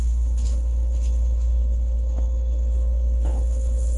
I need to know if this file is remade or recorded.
remade